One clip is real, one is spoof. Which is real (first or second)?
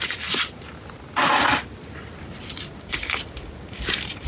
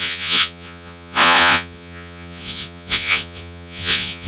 first